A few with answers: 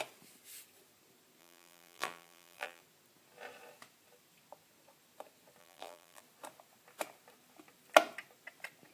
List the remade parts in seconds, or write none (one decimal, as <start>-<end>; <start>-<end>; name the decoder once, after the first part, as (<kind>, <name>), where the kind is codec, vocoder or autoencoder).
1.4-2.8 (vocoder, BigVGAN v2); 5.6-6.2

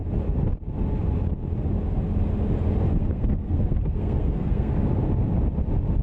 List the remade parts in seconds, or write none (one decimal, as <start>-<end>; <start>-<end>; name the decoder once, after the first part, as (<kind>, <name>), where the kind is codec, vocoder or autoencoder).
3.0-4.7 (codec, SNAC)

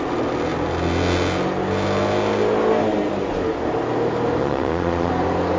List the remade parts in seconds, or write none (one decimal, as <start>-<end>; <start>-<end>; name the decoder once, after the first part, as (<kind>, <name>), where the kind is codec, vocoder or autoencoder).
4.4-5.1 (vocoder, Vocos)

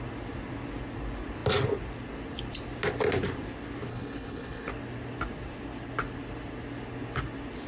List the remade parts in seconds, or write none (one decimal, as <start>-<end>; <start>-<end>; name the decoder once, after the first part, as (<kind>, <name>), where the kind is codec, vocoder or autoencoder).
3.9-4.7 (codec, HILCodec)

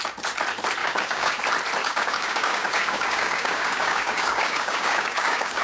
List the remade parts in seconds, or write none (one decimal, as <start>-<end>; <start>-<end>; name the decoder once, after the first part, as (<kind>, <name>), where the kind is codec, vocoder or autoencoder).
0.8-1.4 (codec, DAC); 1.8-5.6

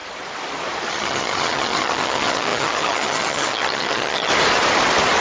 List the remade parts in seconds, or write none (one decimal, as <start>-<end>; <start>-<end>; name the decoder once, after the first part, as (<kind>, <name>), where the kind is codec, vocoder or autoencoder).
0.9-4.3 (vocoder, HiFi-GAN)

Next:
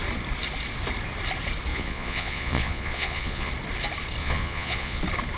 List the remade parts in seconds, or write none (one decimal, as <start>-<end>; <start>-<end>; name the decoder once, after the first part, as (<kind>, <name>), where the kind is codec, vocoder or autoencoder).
1.7-3.5 (vocoder, Vocos); 4.2-5.0

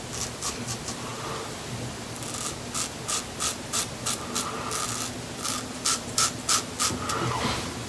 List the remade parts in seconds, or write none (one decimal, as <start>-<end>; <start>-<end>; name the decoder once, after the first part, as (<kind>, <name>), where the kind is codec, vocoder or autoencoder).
none